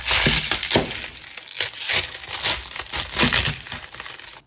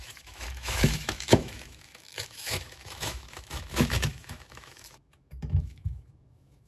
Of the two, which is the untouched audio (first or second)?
first